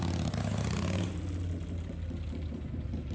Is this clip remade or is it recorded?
recorded